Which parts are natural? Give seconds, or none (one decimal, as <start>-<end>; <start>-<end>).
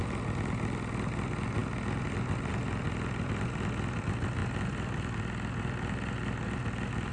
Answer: 0.0-7.1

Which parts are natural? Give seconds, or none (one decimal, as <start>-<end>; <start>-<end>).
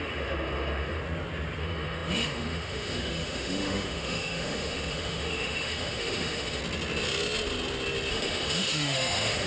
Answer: 1.0-1.6; 6.6-8.1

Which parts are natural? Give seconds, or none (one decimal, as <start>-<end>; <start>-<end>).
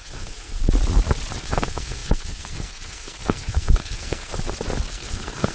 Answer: 0.6-1.4; 4.3-4.9